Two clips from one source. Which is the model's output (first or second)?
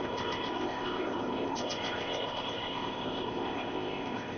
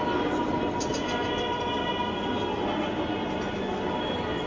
first